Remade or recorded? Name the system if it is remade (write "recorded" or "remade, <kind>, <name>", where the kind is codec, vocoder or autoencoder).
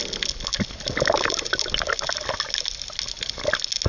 recorded